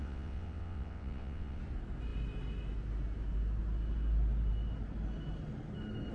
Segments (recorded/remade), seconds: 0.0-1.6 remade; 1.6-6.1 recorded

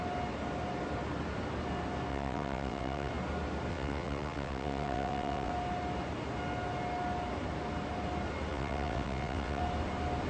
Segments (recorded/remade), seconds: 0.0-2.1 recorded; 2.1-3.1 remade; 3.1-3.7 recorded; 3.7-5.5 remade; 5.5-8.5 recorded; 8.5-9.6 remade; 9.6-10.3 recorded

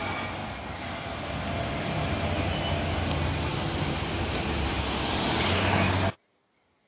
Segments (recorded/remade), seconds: 0.0-6.9 recorded

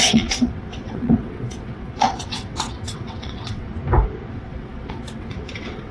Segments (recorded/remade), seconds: 0.0-3.7 remade; 3.7-4.3 recorded; 4.3-5.9 remade